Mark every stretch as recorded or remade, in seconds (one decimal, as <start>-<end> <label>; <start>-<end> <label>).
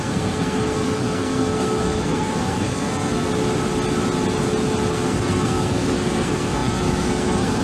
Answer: 0.0-3.3 remade; 3.3-4.9 recorded; 4.9-7.6 remade